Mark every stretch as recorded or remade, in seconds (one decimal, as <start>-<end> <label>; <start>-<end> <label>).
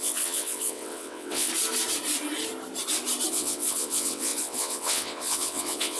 0.0-1.5 remade; 1.5-3.3 recorded; 3.3-6.0 remade